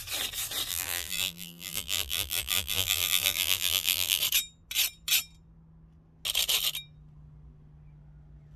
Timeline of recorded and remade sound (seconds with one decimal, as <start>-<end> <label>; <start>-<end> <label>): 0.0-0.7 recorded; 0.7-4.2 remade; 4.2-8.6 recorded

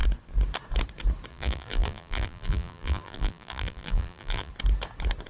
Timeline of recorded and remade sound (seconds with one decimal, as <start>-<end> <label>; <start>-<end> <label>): 0.0-1.3 recorded; 1.3-4.5 remade; 4.5-5.3 recorded

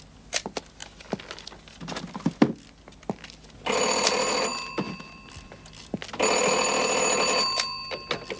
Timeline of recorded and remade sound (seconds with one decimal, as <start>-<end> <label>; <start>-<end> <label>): 0.0-8.4 recorded

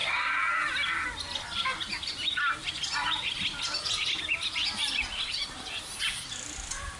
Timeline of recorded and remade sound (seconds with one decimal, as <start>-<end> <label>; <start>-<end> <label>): 0.0-7.0 recorded